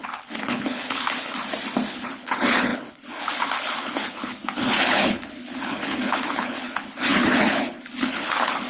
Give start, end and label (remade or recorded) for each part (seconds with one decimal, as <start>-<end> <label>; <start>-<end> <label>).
0.0-1.3 remade; 1.3-1.9 recorded; 1.9-8.7 remade